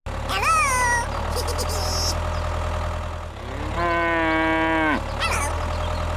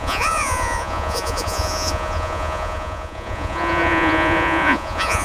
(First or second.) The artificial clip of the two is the second